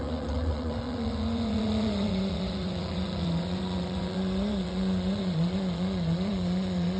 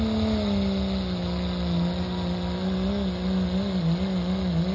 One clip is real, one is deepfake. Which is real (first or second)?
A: second